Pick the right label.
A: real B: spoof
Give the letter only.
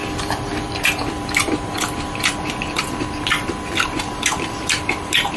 B